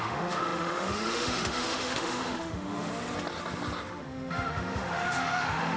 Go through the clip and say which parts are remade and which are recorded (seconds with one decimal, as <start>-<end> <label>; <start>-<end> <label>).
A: 0.0-2.9 remade; 2.9-4.0 recorded; 4.0-5.8 remade